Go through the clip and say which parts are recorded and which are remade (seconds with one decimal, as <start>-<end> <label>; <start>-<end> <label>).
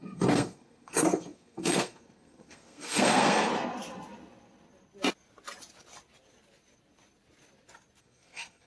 0.0-3.5 remade; 3.5-8.0 recorded; 8.0-8.7 remade